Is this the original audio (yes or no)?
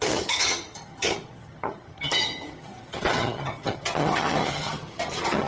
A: no